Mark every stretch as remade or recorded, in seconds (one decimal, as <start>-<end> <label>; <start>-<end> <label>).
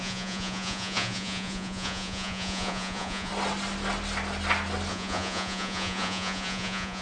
0.0-3.3 remade; 3.3-4.9 recorded; 4.9-7.0 remade